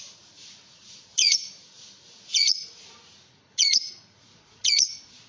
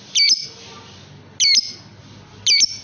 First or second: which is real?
second